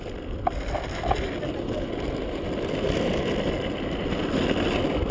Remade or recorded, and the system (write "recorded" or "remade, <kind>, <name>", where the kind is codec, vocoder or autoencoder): recorded